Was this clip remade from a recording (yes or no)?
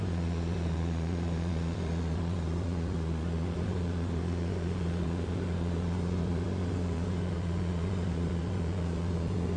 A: yes